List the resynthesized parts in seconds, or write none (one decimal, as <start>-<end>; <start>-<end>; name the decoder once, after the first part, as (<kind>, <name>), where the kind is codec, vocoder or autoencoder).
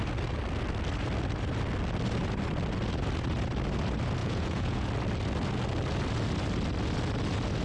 4.2-4.9 (vocoder, Vocos)